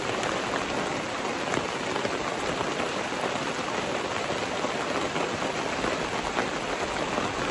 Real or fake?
real